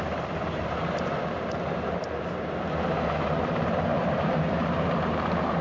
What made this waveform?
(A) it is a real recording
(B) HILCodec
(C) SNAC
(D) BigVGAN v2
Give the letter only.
D